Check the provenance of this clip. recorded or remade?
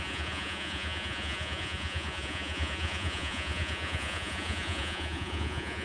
remade